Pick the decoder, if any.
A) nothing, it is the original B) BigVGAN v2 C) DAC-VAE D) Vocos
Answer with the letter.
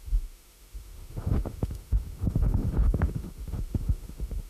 C